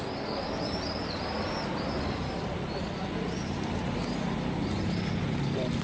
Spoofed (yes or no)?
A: no